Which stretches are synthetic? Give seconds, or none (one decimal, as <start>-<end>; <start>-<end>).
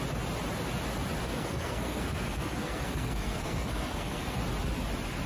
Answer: 1.2-4.4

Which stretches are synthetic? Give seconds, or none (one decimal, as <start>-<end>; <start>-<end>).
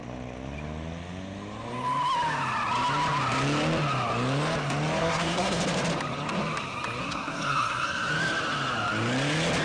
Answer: 5.0-5.6; 7.0-8.1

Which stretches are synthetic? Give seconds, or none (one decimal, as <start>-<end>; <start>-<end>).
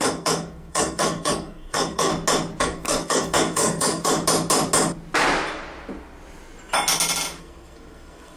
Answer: 0.0-2.1; 2.6-4.1; 7.4-8.4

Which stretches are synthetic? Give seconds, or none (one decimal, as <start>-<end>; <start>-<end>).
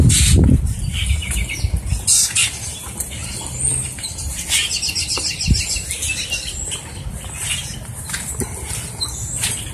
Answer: none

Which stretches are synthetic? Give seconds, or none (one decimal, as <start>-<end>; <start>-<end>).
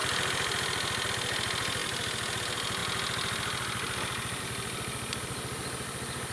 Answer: none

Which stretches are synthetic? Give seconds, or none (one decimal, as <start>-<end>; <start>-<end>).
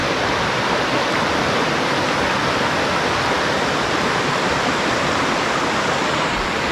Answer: none